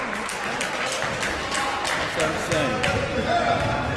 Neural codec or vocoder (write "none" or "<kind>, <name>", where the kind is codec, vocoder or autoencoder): none